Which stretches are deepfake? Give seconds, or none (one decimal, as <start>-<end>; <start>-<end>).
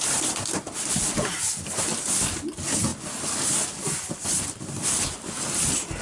none